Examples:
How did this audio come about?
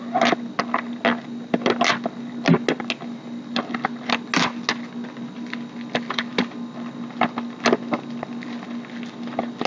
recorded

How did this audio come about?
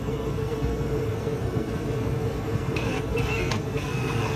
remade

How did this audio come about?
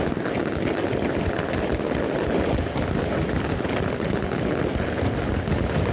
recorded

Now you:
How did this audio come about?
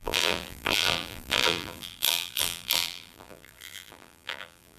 remade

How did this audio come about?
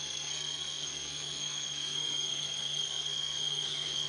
remade